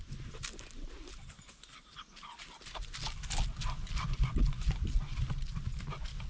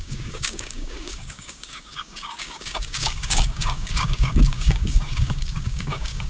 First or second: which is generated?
second